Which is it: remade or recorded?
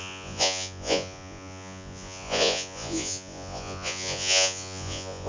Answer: remade